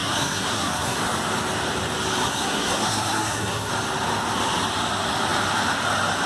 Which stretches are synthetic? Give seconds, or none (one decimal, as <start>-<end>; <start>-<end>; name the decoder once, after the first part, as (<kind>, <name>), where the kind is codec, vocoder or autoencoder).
0.0-1.0 (codec, SNAC); 2.2-3.7